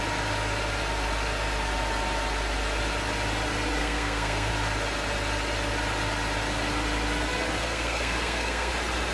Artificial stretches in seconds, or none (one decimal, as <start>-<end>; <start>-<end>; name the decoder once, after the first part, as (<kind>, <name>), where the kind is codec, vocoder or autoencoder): 3.8-4.5 (codec, SNAC); 7.6-8.7